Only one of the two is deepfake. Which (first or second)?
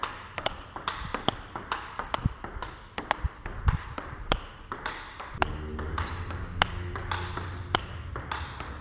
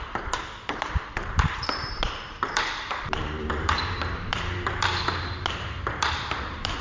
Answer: second